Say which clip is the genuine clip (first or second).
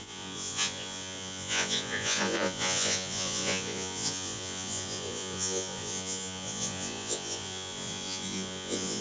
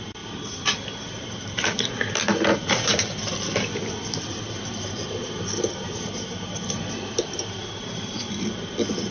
second